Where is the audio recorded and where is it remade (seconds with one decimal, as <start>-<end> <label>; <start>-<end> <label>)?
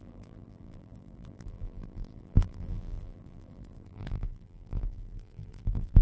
0.0-6.0 remade